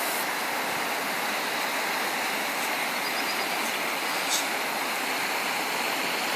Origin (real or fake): real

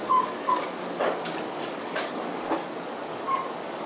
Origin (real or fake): fake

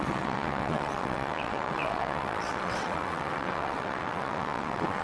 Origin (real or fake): fake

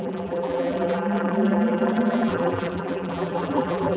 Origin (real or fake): fake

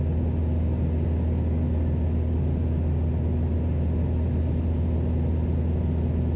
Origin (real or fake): real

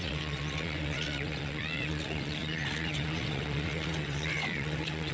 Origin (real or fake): fake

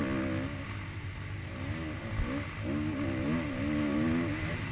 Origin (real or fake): real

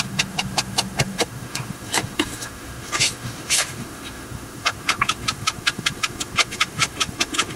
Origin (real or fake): fake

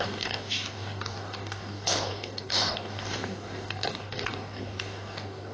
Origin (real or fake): fake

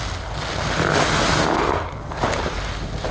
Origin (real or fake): real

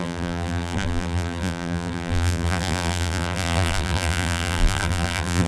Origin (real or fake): fake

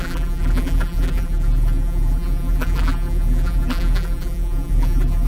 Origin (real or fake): fake